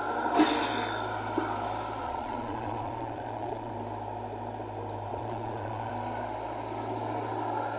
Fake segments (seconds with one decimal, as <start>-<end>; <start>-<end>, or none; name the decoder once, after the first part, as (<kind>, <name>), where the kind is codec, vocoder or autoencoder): 2.0-3.7 (vocoder, Vocos); 5.1-5.9